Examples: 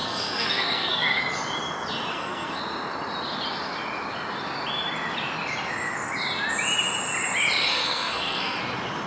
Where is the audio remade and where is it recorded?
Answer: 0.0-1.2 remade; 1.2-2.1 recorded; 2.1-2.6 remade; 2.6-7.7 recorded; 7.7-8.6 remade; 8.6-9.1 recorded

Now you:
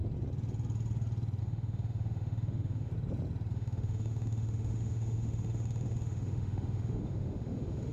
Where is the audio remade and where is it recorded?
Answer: 0.0-1.4 recorded; 1.4-2.9 remade; 2.9-3.5 recorded; 3.5-7.9 remade

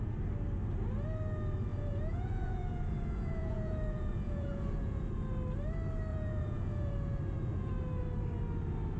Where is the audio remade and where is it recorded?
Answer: 0.0-1.7 recorded; 1.7-5.1 remade; 5.1-6.1 recorded; 6.1-7.7 remade; 7.7-9.0 recorded

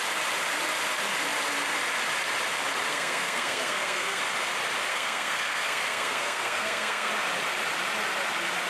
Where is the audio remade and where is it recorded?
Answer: 0.0-2.9 recorded; 2.9-4.2 remade; 4.2-4.9 recorded; 4.9-7.1 remade; 7.1-8.7 recorded

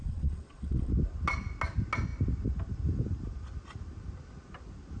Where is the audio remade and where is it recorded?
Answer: 0.0-0.9 remade; 0.9-5.0 recorded

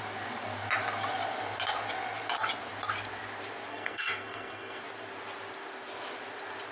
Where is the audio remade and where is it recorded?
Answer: 0.0-3.7 recorded; 3.7-4.8 remade; 4.8-6.7 recorded